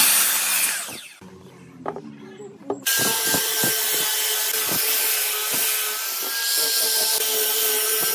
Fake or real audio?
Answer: real